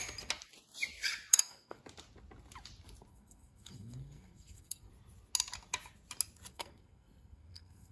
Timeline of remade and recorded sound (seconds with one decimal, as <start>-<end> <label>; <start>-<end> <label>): 0.0-1.3 recorded; 1.3-1.8 remade; 1.8-3.1 recorded; 3.1-4.9 remade; 4.9-6.5 recorded; 6.5-7.9 remade